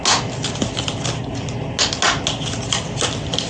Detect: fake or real real